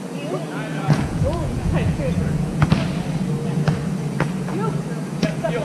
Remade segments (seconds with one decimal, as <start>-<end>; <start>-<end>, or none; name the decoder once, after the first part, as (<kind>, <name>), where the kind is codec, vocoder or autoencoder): 0.7-2.6 (vocoder, Vocos)